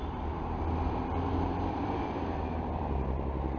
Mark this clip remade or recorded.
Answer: remade